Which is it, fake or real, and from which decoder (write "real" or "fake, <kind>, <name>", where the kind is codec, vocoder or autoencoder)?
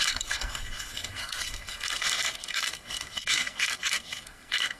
fake, codec, SNAC